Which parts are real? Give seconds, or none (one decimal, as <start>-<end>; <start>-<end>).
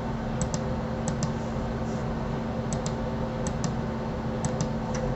0.0-5.2